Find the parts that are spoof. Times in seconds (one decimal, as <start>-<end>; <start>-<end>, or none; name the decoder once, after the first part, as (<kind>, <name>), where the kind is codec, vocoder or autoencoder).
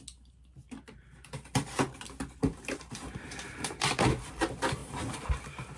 0.6-1.7 (vocoder, BigVGAN v2); 2.4-4.3; 4.8-5.8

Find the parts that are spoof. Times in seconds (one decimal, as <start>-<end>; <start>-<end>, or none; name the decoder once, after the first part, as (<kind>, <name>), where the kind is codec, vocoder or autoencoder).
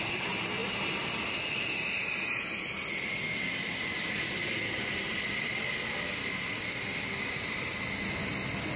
none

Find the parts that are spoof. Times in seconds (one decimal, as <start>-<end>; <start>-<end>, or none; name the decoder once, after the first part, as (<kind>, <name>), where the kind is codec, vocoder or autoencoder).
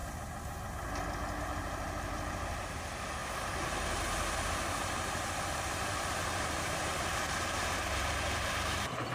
1.4-3.2 (vocoder, BigVGAN v2); 5.5-9.1